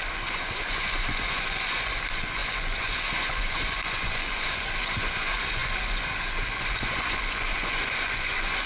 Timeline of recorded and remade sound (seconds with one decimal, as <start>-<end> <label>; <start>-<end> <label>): 0.0-8.7 remade